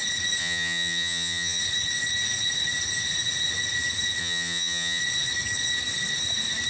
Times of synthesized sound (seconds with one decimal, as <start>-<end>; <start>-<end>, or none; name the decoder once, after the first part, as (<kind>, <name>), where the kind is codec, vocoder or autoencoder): 0.4-1.6 (vocoder, HiFi-GAN); 4.2-5.0